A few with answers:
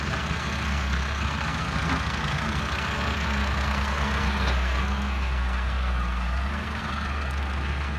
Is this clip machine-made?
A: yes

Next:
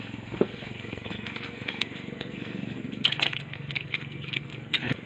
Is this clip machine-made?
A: yes